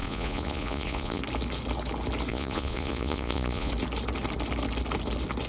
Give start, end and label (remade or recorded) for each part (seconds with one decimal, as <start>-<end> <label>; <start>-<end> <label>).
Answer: 0.0-1.2 remade; 1.2-2.3 recorded; 2.3-3.7 remade; 3.7-5.5 recorded